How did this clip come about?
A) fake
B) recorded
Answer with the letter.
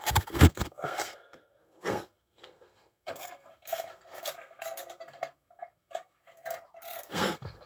A